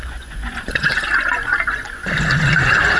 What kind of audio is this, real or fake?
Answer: fake